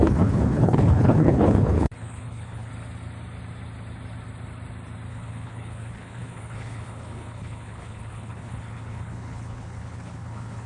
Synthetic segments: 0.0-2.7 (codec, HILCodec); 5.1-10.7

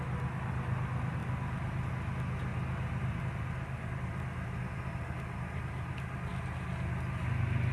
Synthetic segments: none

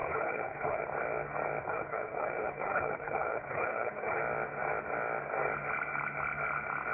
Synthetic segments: 0.0-0.8 (codec, HILCodec); 1.6-4.2